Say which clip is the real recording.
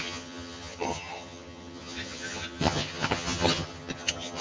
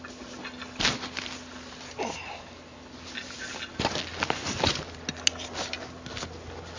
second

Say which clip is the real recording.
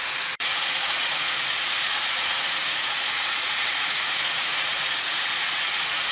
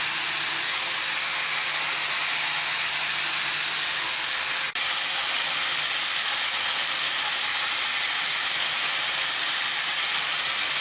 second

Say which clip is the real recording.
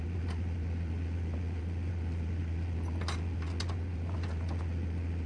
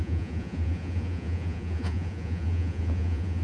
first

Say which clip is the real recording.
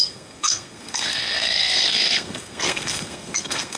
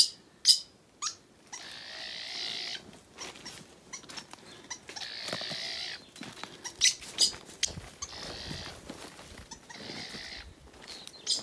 second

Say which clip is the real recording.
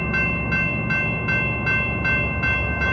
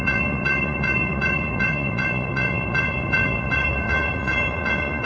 first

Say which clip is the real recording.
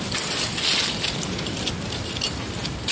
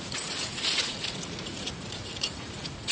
first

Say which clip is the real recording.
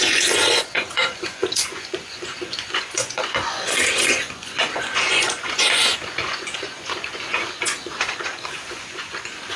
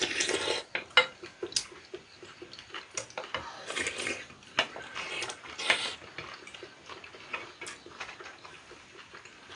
second